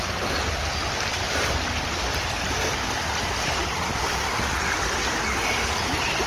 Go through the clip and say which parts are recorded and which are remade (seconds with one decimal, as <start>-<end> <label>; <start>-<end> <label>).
0.0-3.9 remade; 3.9-6.3 recorded